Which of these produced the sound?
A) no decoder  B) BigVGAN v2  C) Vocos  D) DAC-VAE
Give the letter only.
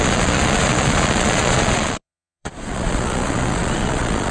C